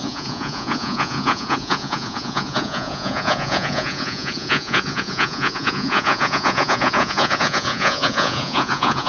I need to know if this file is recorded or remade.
remade